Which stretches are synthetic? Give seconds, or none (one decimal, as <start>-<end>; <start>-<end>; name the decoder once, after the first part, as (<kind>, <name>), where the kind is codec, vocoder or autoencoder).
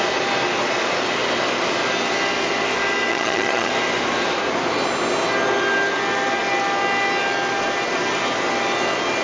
3.1-3.7 (vocoder, HiFi-GAN)